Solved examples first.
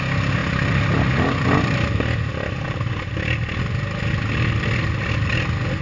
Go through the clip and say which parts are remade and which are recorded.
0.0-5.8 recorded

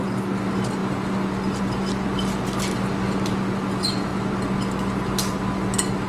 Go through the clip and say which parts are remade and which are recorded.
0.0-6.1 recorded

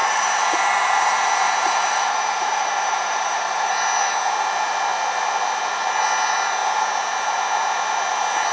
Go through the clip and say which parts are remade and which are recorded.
0.0-3.7 remade; 3.7-8.5 recorded